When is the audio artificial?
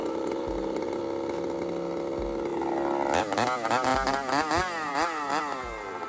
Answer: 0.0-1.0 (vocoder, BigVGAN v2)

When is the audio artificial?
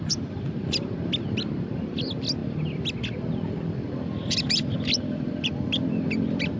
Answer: none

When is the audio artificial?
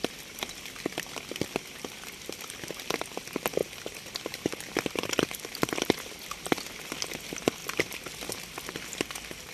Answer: none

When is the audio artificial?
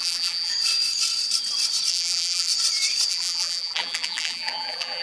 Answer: 0.0-0.5 (vocoder, BigVGAN v2); 1.9-2.5; 3.1-5.0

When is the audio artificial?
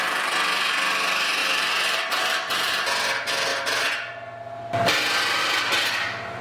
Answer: 1.4-2.7 (vocoder, BigVGAN v2); 5.4-6.4